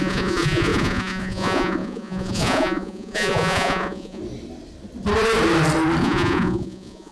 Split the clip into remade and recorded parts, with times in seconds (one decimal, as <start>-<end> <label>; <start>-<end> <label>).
0.0-4.2 remade; 4.2-6.0 recorded; 6.0-7.1 remade